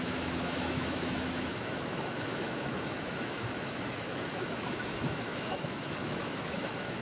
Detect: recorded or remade remade